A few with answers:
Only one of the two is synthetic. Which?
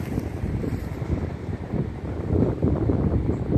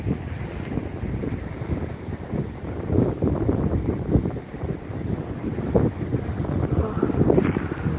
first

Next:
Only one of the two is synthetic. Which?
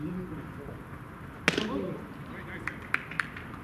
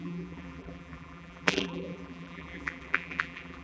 second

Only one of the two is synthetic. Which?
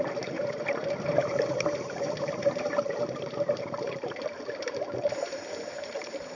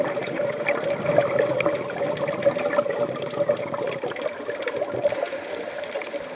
first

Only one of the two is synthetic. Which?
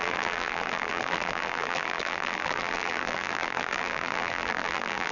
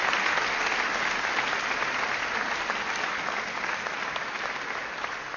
first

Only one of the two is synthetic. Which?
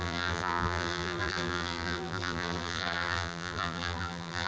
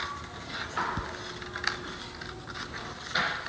first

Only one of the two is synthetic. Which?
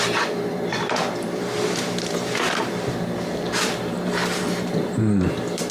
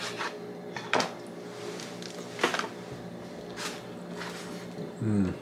first